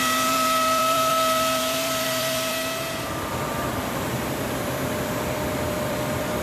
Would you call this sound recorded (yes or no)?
no